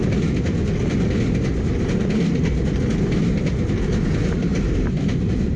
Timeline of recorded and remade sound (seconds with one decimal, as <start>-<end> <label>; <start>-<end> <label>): 0.0-5.6 recorded